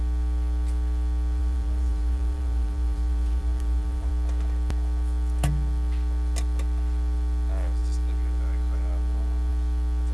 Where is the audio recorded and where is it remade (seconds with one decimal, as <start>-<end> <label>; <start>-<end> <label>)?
0.0-1.4 recorded; 1.4-4.1 remade; 4.1-10.1 recorded